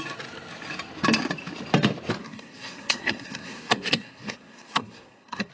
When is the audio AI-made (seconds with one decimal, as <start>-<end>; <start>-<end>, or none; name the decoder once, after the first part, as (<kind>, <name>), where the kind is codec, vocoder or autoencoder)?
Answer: 2.2-5.5 (codec, SNAC)